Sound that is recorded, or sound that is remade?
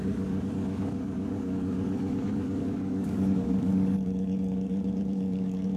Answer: remade